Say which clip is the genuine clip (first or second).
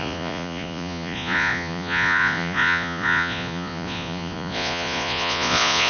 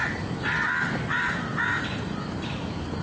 second